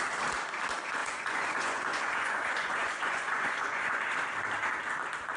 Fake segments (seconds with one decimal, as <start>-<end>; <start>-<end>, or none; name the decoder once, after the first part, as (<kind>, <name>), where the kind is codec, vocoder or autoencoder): 1.0-4.0 (vocoder, Vocos)